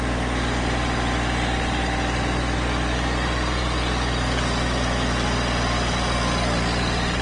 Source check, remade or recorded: recorded